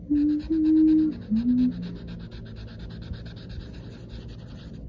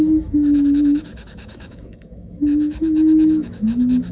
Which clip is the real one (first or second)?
first